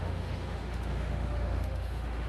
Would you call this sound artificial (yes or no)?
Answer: yes